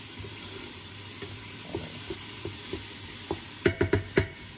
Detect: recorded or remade remade